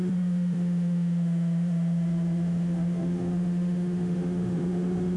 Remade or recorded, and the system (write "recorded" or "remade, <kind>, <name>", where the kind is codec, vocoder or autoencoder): remade, autoencoder, DAC-VAE